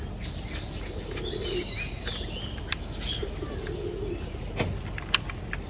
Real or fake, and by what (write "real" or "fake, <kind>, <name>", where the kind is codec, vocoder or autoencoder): real